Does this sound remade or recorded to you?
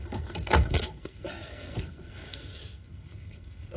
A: remade